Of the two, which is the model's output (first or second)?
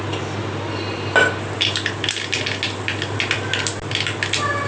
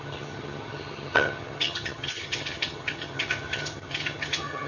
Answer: second